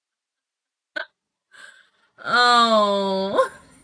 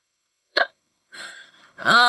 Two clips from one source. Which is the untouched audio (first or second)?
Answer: first